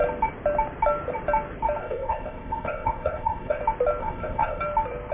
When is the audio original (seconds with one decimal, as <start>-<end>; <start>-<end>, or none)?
0.0-1.8; 3.6-4.0; 4.6-5.1